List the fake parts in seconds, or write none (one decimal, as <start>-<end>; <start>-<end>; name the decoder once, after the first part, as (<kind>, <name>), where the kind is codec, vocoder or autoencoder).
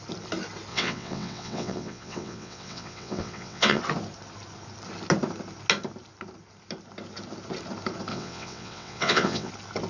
0.7-3.8 (vocoder, WaveNeXt); 8.1-9.5